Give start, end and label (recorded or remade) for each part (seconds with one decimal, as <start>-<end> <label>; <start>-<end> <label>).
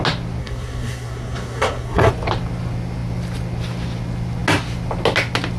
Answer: 0.0-0.4 recorded; 0.4-2.1 remade; 2.1-5.6 recorded